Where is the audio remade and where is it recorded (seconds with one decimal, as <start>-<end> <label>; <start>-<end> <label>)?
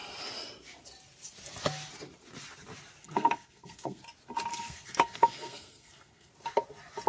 0.0-3.0 recorded; 3.0-4.0 remade; 4.0-4.5 recorded; 4.5-6.3 remade; 6.3-7.1 recorded